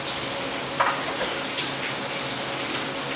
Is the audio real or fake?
real